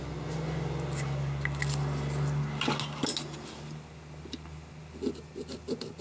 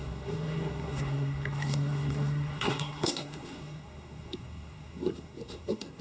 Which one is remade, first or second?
second